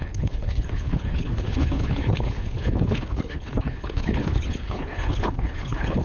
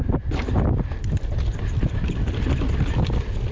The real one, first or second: second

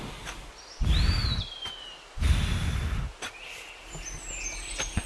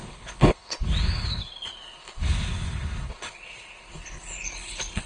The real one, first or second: first